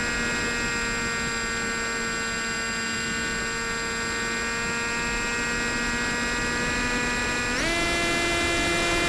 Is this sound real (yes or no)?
yes